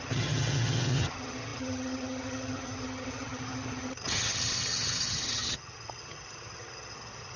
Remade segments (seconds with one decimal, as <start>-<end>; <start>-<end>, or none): 0.0-7.4